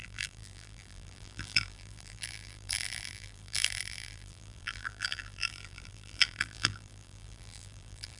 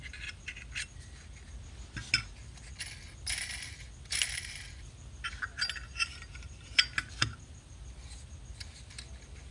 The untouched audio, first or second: second